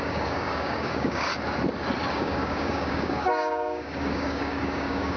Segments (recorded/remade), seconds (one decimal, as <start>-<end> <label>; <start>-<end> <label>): 0.0-1.3 remade; 1.3-2.1 recorded; 2.1-5.2 remade